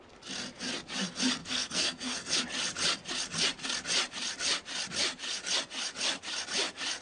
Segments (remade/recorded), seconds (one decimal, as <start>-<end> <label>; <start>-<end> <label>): 0.0-1.4 recorded; 1.4-2.4 remade; 2.4-7.0 recorded